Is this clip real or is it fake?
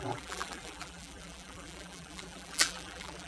fake